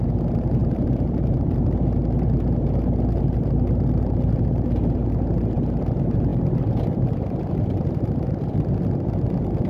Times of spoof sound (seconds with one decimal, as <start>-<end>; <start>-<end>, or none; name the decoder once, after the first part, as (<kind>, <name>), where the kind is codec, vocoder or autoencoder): 0.6-1.6 (vocoder, BigVGAN v2)